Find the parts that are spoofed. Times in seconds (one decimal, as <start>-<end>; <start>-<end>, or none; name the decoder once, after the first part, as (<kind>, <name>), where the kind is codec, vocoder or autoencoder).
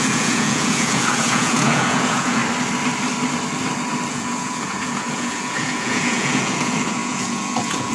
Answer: 0.0-2.4 (vocoder, Vocos); 4.1-7.9